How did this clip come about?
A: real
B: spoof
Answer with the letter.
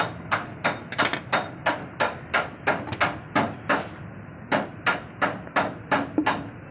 A